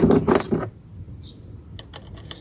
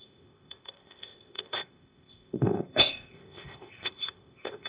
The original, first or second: first